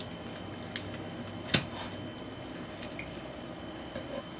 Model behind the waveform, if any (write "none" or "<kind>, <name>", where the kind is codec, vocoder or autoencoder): none